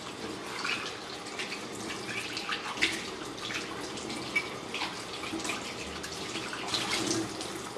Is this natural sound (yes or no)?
yes